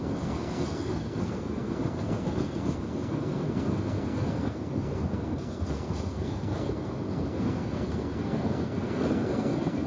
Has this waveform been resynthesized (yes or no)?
yes